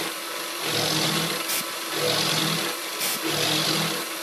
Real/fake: real